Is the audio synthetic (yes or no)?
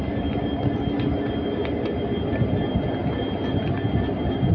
no